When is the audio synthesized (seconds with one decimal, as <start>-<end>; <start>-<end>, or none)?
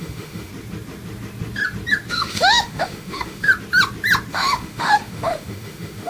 0.0-0.5; 2.1-3.5; 4.3-6.1